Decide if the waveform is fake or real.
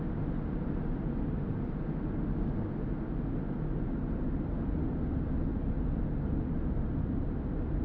real